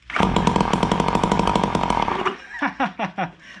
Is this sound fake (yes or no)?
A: no